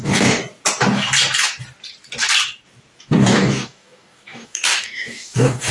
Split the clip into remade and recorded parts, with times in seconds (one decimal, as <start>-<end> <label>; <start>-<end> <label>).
0.0-0.4 remade; 0.4-3.0 recorded; 3.0-5.7 remade